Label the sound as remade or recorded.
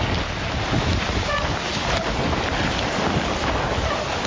recorded